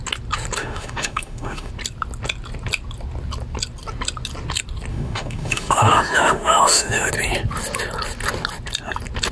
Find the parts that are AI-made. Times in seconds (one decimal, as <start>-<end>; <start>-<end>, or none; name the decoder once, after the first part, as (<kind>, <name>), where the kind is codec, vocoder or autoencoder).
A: 0.6-1.7 (autoencoder, DAC-VAE); 4.9-7.1